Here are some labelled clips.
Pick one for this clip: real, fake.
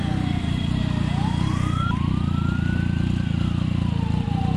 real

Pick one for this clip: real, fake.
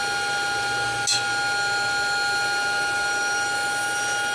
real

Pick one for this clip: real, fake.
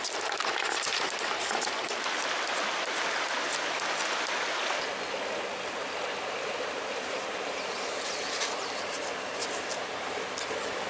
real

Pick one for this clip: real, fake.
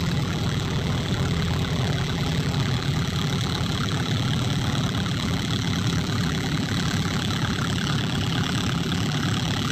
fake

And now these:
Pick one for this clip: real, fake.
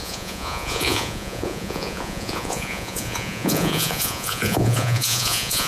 fake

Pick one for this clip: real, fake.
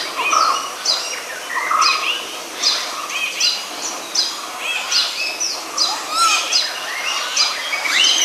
real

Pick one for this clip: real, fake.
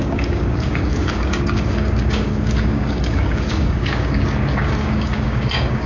fake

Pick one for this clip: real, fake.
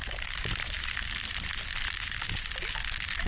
real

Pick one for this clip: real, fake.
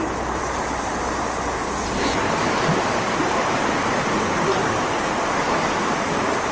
real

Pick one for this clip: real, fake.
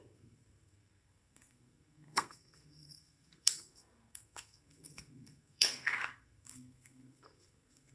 fake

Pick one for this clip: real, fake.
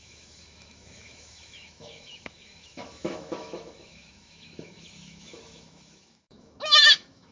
fake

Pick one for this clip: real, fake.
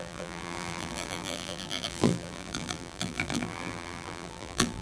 fake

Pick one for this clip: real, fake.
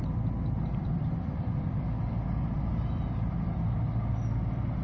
real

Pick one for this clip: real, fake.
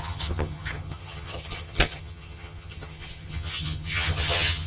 fake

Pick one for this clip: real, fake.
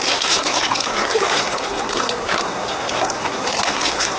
fake